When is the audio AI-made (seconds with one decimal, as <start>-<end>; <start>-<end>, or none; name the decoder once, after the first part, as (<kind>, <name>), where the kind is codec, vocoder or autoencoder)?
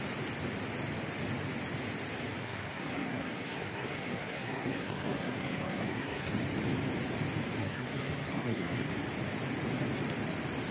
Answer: 2.4-6.3 (codec, SNAC); 7.6-8.9